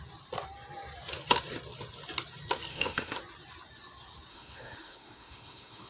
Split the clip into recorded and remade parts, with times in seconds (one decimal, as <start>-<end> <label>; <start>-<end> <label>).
0.0-2.7 recorded; 2.7-3.2 remade; 3.2-4.3 recorded; 4.3-5.9 remade